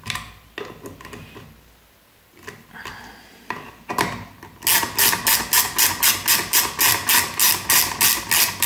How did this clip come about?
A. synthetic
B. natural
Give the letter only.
B